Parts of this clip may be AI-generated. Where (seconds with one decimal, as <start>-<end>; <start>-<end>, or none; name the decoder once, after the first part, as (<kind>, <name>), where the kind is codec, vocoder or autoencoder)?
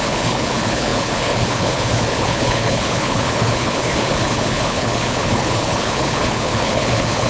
0.0-7.3 (codec, HILCodec)